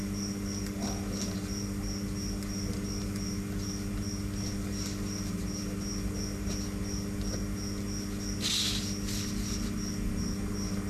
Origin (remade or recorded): recorded